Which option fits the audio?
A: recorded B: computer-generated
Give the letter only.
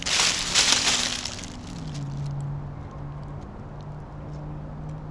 A